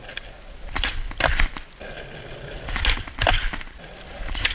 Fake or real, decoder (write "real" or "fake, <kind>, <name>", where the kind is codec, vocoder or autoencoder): real